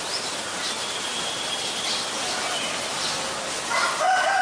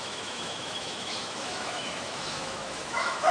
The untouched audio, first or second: first